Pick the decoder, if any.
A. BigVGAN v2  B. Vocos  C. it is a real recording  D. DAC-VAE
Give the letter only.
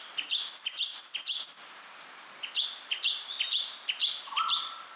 C